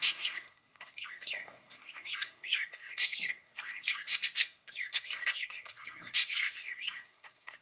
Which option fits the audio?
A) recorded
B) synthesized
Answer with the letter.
B